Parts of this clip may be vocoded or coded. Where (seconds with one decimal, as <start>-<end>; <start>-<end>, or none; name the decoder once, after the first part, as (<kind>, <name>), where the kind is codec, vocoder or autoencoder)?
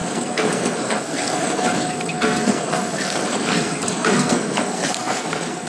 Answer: 0.0-5.7 (codec, SNAC)